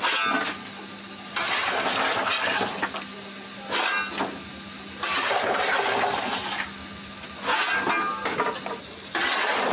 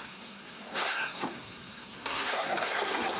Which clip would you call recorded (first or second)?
first